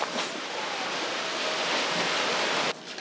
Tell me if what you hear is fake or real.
real